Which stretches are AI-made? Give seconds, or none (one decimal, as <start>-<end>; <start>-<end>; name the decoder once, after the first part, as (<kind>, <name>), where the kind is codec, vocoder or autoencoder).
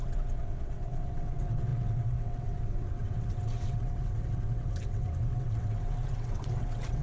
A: 0.0-7.0 (vocoder, WaveNeXt)